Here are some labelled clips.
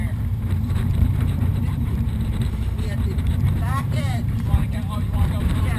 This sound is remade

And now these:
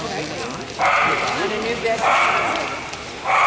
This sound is recorded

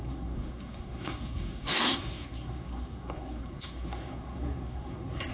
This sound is remade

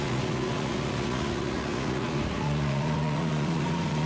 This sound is remade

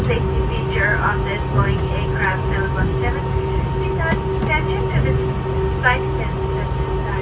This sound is recorded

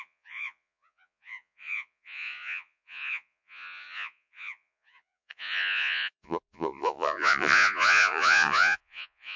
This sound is remade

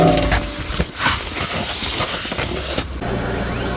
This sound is recorded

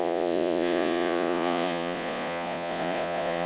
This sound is remade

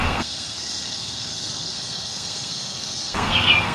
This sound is remade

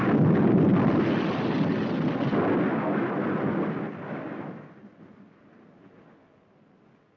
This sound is recorded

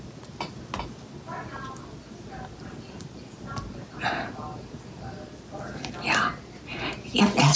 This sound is recorded